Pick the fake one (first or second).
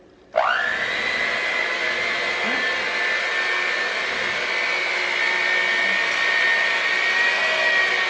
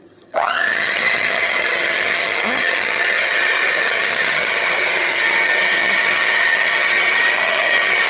second